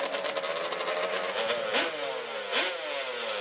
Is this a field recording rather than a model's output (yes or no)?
yes